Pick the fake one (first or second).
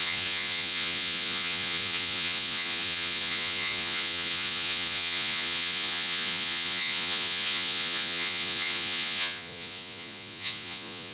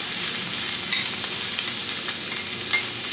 first